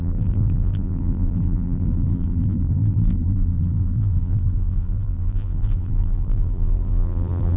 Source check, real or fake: fake